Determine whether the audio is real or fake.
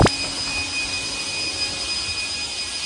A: real